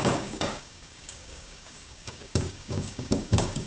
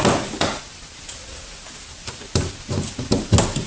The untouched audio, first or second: second